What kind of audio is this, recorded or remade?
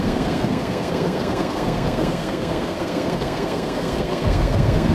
remade